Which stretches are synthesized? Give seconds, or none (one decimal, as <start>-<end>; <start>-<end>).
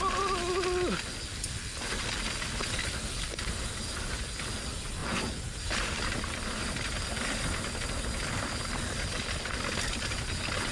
5.0-7.4